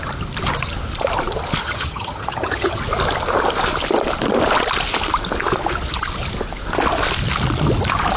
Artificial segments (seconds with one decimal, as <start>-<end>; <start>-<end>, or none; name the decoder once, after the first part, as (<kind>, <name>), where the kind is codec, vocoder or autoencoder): 1.6-2.8 (vocoder, HiFi-GAN)